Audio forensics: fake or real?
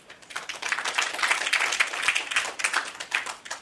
real